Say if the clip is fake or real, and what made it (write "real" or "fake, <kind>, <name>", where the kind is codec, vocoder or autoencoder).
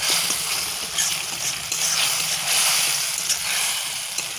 fake, vocoder, BigVGAN v2